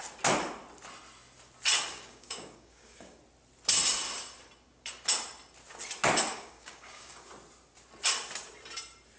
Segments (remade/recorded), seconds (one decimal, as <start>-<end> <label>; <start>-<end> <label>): 0.0-1.9 recorded; 1.9-3.2 remade; 3.2-6.3 recorded; 6.3-7.3 remade; 7.3-9.2 recorded

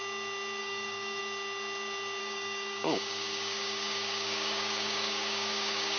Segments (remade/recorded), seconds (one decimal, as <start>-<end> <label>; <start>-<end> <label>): 0.0-0.6 recorded; 0.6-1.2 remade; 1.2-2.2 recorded; 2.2-6.0 remade